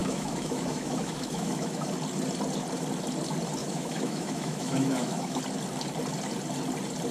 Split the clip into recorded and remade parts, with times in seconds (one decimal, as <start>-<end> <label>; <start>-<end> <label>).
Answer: 0.0-1.9 remade; 1.9-3.6 recorded; 3.6-5.4 remade; 5.4-7.1 recorded